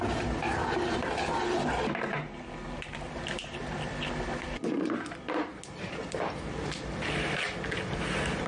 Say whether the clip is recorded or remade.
recorded